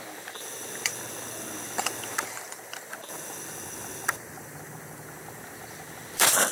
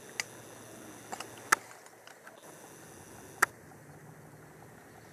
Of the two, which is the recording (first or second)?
second